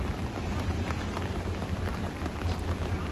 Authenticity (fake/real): fake